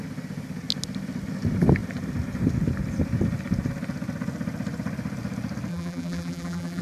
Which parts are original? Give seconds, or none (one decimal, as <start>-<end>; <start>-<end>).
0.0-5.7

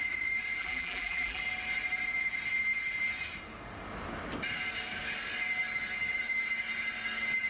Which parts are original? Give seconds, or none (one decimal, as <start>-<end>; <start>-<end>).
0.0-0.6; 1.4-7.5

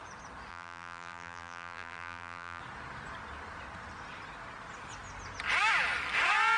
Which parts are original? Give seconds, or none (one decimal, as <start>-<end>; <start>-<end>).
0.0-0.5; 2.6-6.6

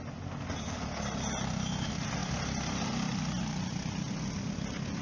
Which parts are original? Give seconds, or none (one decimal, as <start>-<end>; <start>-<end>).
0.0-5.0